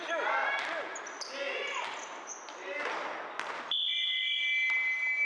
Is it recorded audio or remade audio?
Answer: recorded